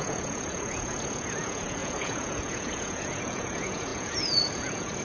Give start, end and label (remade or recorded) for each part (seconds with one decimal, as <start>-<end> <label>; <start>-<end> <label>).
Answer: 0.0-5.0 remade